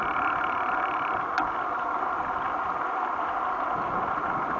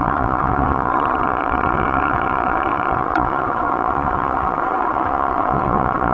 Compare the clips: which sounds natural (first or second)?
first